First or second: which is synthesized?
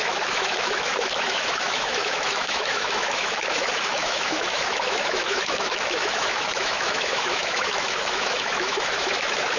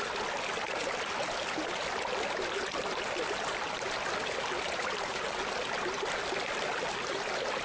first